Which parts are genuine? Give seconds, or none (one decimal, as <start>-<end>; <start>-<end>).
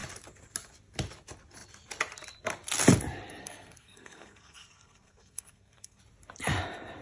0.0-3.4; 6.0-7.0